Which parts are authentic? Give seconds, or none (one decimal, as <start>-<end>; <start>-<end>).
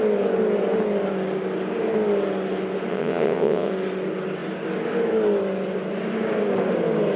0.0-2.9; 3.7-7.2